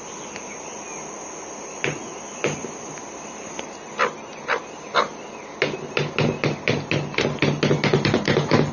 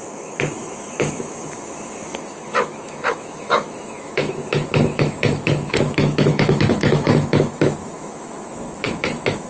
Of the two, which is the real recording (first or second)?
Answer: first